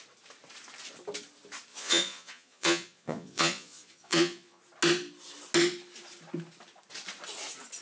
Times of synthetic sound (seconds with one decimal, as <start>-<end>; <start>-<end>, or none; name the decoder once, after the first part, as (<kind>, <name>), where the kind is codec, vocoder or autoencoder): 1.7-4.6 (vocoder, Vocos)